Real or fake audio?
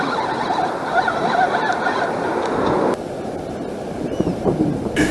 real